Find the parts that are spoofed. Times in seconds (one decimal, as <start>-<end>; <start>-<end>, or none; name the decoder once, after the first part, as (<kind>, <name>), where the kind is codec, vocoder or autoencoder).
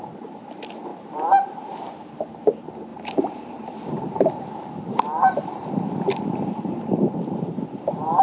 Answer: 0.9-1.7 (vocoder, BigVGAN v2); 2.9-8.2